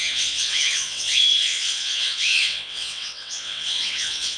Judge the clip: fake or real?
fake